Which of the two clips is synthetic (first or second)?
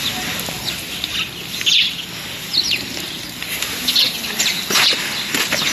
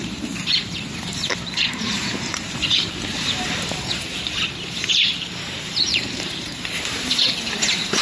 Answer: second